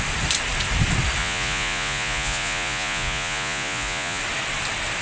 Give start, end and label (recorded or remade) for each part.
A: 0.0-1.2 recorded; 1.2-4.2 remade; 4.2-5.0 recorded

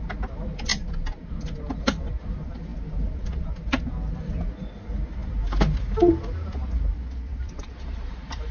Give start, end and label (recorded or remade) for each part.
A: 0.0-7.3 recorded; 7.3-8.5 remade

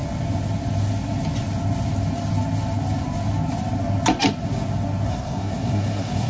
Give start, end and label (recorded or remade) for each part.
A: 0.0-5.1 recorded; 5.1-6.3 remade

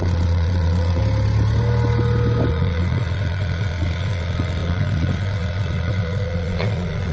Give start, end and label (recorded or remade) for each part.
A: 0.0-1.0 remade; 1.0-2.5 recorded; 2.5-7.1 remade